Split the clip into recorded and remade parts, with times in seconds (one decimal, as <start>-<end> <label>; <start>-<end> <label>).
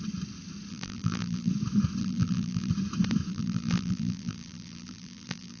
0.0-0.7 recorded; 0.7-1.5 remade; 1.5-2.0 recorded; 2.0-2.7 remade; 2.7-3.3 recorded; 3.3-5.6 remade